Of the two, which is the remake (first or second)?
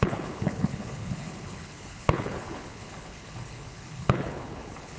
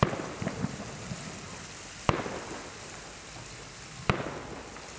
first